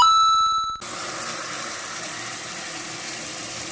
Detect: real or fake real